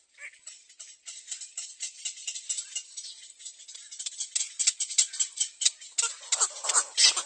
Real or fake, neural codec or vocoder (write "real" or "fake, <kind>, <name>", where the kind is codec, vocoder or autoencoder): real